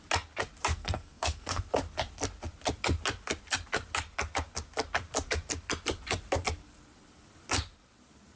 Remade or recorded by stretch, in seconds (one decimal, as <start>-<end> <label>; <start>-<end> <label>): 0.0-0.7 recorded; 0.7-1.6 remade; 1.6-8.4 recorded